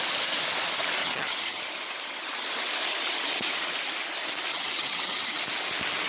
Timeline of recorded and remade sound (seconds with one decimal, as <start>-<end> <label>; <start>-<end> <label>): 0.0-1.0 recorded; 1.0-1.6 remade; 1.6-4.5 recorded; 4.5-5.4 remade; 5.4-6.1 recorded